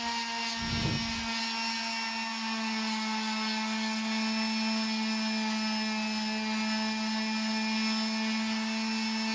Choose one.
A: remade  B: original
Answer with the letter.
B